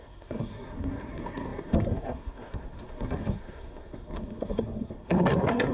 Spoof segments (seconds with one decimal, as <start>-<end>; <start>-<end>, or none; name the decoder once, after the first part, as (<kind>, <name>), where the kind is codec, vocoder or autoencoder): 0.0-5.7 (codec, SNAC)